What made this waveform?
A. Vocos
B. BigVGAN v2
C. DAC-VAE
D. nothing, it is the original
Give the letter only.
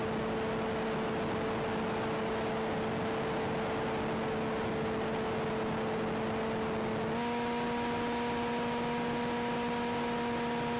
D